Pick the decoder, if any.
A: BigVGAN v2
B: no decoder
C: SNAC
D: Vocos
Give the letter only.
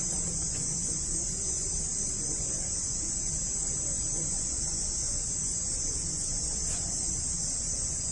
D